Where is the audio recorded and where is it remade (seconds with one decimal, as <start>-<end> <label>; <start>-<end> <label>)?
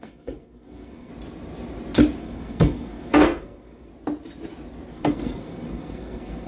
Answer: 0.0-1.1 remade; 1.1-2.2 recorded; 2.2-3.9 remade; 3.9-4.9 recorded; 4.9-6.5 remade